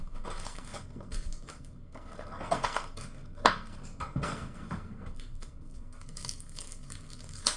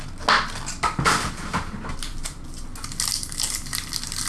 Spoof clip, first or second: first